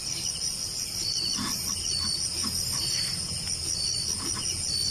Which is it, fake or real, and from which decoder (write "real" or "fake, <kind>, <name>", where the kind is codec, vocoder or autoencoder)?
real